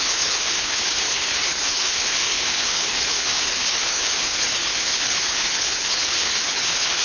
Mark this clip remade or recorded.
remade